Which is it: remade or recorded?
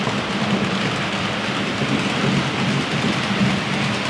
recorded